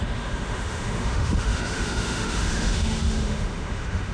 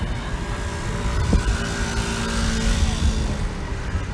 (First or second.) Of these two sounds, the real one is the second